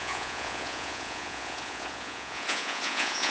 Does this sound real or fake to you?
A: fake